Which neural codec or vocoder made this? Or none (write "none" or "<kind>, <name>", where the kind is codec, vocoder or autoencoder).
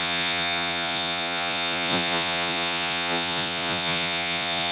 vocoder, Vocos